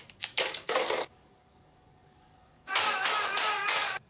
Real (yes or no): no